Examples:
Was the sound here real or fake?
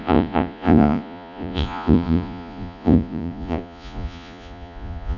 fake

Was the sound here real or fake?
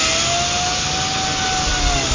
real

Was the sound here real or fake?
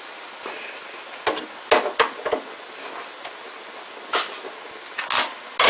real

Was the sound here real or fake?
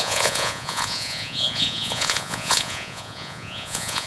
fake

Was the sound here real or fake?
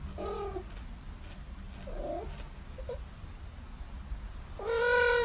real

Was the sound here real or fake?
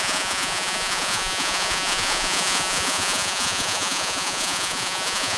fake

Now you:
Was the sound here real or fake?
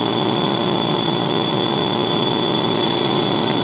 fake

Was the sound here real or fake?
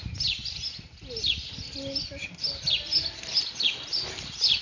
real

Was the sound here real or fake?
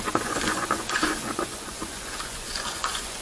fake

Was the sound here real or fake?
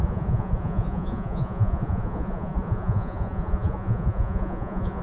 fake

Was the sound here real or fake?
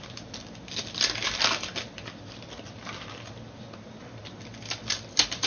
real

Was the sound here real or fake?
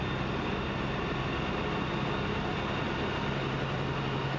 real